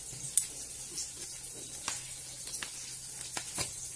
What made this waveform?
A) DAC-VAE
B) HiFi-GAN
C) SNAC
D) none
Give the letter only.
D